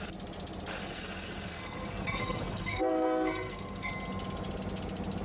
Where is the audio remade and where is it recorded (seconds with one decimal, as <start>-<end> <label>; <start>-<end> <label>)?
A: 0.0-0.8 recorded; 0.8-3.9 remade; 3.9-5.2 recorded

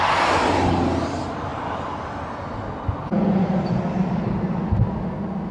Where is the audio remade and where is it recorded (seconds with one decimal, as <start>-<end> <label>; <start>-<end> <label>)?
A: 0.0-5.5 recorded

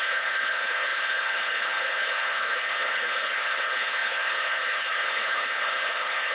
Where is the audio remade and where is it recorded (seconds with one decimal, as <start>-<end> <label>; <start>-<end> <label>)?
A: 0.0-6.3 remade

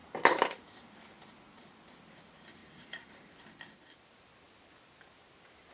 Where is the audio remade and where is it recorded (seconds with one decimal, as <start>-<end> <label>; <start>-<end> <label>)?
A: 0.0-0.9 remade; 0.9-2.6 recorded; 2.6-3.3 remade; 3.3-5.7 recorded

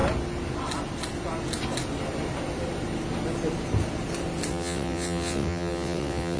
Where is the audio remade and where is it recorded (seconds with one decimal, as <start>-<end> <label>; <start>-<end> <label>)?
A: 0.0-4.5 recorded; 4.5-6.4 remade

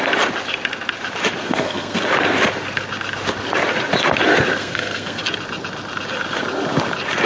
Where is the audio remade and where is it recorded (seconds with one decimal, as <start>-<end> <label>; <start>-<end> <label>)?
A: 0.0-1.4 recorded; 1.4-2.0 remade; 2.0-4.6 recorded; 4.6-5.2 remade; 5.2-7.3 recorded

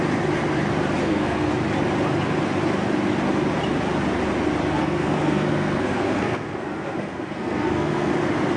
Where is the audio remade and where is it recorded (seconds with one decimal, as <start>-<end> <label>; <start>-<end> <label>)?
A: 0.0-1.0 recorded; 1.0-1.5 remade; 1.5-4.8 recorded; 4.8-8.1 remade; 8.1-8.6 recorded

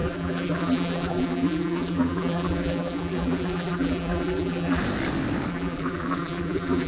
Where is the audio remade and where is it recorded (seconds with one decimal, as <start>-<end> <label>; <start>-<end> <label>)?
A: 0.0-4.8 remade; 4.8-5.5 recorded; 5.5-6.9 remade